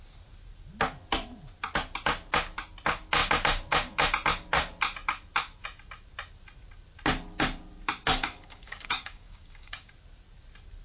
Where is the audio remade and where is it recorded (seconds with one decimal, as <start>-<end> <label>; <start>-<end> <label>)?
0.0-8.2 recorded; 8.2-9.9 remade; 9.9-10.8 recorded